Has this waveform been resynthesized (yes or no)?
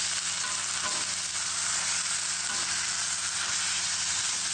no